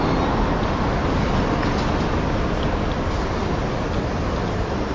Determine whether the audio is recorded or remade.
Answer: recorded